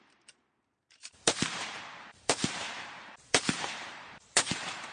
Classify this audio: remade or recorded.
remade